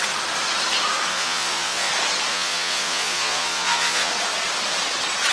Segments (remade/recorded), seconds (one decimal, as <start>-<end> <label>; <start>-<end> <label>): 0.0-1.1 recorded; 1.1-1.9 remade; 1.9-2.3 recorded; 2.3-4.1 remade; 4.1-5.3 recorded